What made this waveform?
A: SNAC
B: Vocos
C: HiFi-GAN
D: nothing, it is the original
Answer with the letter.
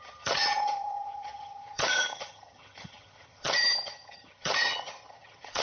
C